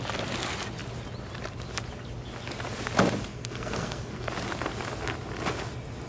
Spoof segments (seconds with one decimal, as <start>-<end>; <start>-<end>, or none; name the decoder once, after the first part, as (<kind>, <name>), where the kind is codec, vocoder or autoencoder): 3.3-4.3 (codec, SNAC)